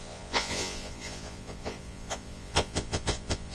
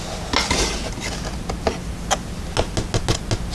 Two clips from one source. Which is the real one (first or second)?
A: second